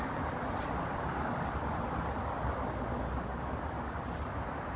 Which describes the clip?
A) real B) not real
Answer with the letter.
A